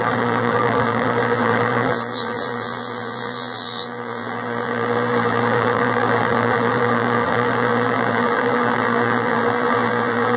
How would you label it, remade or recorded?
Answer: remade